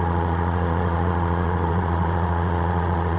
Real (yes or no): no